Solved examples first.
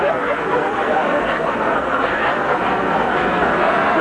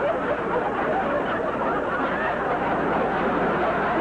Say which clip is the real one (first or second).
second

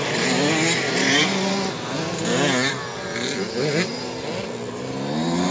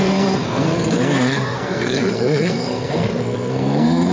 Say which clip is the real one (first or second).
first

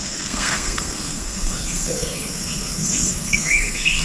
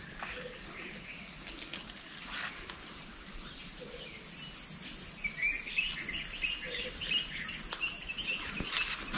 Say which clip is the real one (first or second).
second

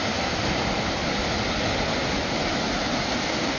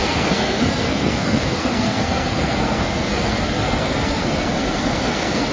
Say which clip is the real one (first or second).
first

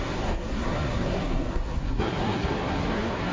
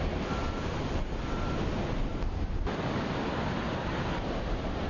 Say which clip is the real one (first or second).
second